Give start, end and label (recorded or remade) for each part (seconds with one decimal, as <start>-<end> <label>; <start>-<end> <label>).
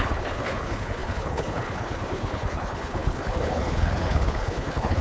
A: 0.0-5.0 remade